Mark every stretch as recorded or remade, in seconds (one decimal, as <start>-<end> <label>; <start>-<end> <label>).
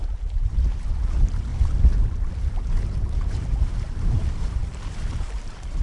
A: 0.0-0.9 recorded; 0.9-1.5 remade; 1.5-2.4 recorded; 2.4-5.8 remade